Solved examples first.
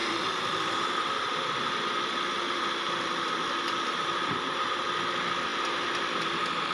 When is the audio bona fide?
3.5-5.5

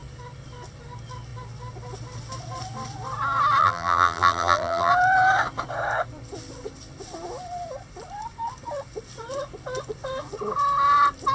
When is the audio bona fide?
0.0-3.6; 4.9-11.3

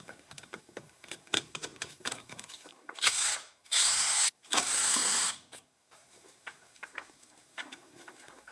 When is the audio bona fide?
none